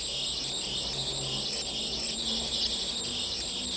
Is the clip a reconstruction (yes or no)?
no